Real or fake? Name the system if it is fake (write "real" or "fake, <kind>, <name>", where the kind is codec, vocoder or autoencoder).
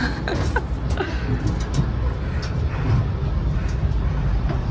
real